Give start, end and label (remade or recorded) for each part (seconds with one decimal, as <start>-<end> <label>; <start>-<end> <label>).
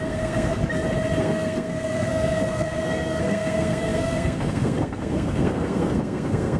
0.0-0.6 remade; 0.6-1.2 recorded; 1.2-6.6 remade